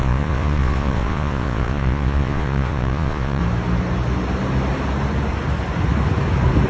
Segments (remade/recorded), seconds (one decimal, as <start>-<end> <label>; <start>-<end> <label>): 0.0-3.4 remade; 3.4-6.7 recorded